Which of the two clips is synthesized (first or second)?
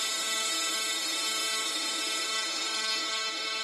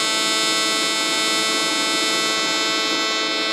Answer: first